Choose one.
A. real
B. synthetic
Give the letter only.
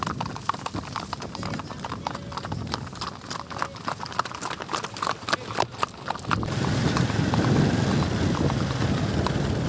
A